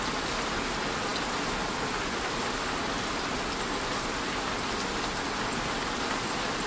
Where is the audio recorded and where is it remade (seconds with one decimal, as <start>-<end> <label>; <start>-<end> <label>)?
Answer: 0.0-6.7 recorded